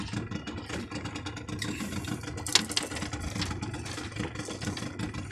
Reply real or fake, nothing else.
real